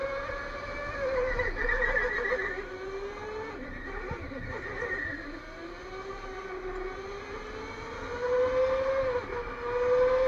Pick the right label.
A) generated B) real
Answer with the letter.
B